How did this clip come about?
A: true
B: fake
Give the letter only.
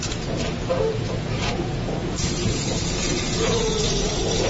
B